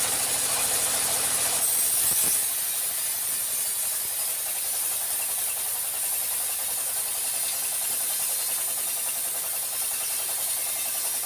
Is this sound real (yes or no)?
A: yes